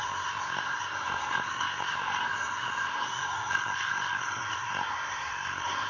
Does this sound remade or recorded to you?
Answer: remade